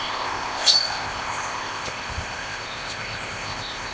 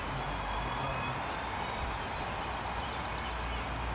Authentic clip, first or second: second